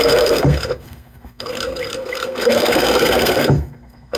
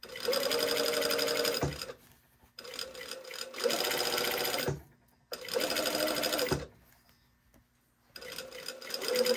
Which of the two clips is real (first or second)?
second